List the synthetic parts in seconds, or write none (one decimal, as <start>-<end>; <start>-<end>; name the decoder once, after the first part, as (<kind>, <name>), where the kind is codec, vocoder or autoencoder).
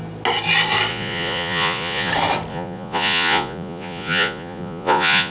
0.9-2.1 (vocoder, Vocos); 2.5-5.3